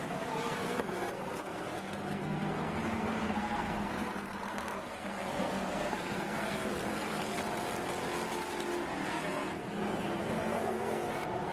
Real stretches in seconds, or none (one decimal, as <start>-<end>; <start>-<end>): 7.4-9.1